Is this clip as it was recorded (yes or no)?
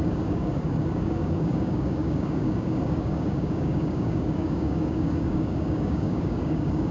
no